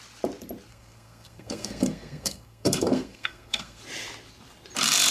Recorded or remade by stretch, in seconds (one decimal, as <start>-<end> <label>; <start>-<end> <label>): 0.0-0.7 recorded; 0.7-3.8 remade; 3.8-5.1 recorded